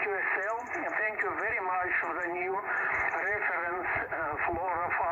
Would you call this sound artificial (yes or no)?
no